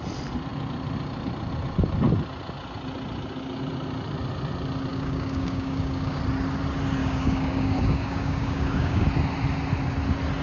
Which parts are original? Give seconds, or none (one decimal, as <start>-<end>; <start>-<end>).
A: 0.0-4.9; 6.2-7.0; 9.1-10.4